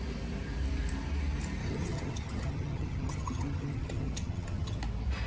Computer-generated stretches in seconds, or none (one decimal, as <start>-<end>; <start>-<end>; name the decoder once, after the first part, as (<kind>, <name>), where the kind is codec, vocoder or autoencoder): 1.6-4.8 (vocoder, HiFi-GAN)